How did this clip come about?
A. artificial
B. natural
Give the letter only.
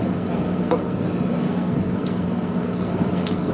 A